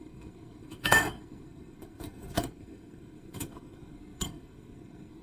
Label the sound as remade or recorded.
remade